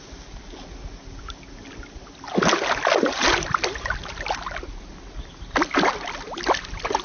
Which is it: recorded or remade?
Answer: recorded